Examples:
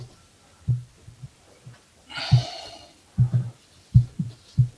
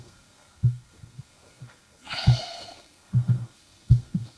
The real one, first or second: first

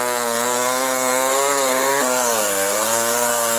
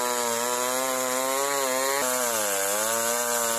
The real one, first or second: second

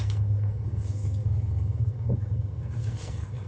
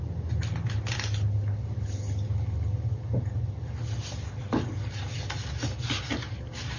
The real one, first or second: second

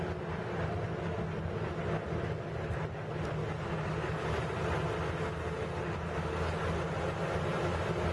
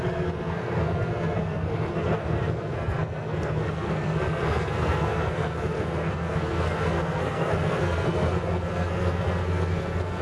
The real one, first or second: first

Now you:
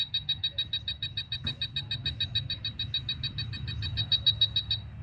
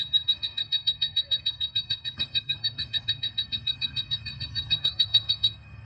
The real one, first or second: first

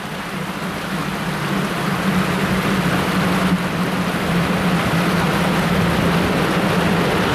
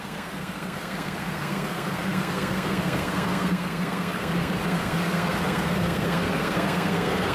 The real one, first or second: first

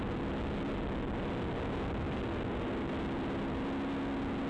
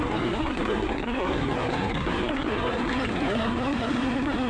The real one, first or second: first